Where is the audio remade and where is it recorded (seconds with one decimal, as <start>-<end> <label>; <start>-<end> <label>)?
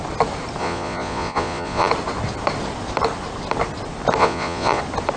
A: 0.0-0.6 recorded; 0.6-1.9 remade; 1.9-4.2 recorded; 4.2-4.8 remade; 4.8-5.2 recorded